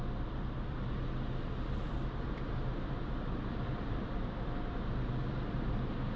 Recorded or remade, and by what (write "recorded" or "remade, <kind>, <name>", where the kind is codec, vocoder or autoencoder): remade, vocoder, BigVGAN v2